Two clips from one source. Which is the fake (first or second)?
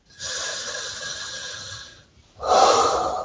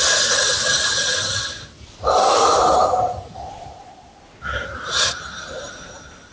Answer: second